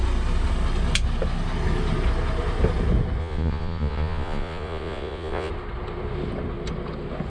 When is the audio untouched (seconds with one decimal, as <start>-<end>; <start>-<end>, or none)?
0.0-3.2; 5.5-7.3